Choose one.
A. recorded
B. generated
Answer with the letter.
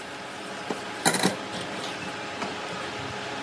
A